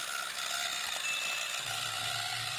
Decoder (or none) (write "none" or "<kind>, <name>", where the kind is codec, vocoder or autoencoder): none